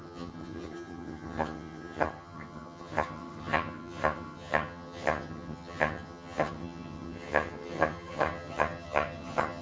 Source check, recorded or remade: remade